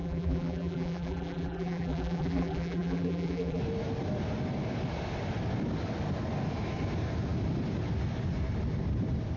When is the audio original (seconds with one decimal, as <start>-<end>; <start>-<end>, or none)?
3.6-9.4